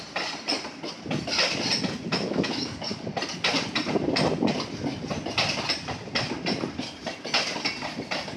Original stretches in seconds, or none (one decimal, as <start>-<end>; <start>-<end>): 0.0-2.1; 2.7-8.4